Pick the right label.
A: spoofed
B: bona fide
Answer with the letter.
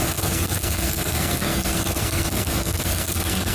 A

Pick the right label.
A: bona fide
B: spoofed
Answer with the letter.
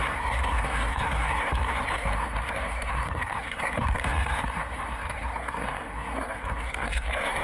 B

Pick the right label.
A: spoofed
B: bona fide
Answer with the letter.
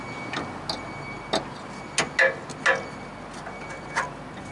B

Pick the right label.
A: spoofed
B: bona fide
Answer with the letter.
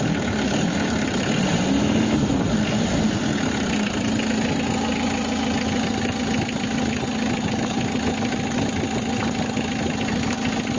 B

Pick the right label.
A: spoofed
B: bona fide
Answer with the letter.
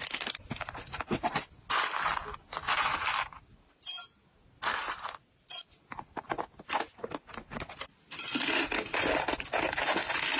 B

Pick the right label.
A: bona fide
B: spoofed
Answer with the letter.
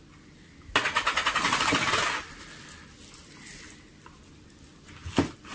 A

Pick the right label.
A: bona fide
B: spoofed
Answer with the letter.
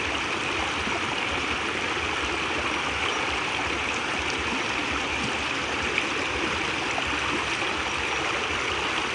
A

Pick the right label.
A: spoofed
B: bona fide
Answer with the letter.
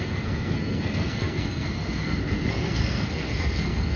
A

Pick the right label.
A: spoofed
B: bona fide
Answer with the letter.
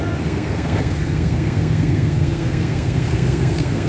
A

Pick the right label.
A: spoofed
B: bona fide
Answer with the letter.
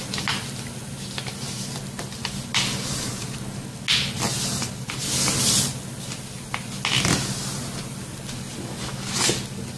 B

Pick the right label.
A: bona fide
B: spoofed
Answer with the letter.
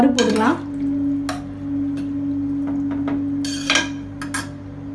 A